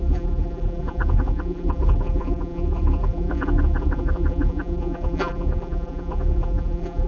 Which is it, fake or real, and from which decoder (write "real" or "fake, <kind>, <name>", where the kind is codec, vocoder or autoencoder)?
fake, vocoder, BigVGAN v2